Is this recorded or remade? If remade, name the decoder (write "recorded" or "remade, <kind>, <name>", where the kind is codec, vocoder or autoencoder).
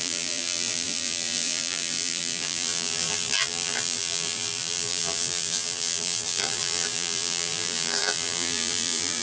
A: remade, vocoder, BigVGAN v2